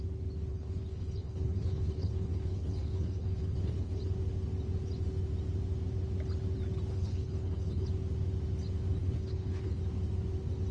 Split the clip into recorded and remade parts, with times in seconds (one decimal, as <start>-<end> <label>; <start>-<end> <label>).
0.0-0.5 recorded; 0.5-4.0 remade; 4.0-6.9 recorded; 6.9-7.9 remade; 7.9-9.0 recorded; 9.0-9.8 remade; 9.8-10.7 recorded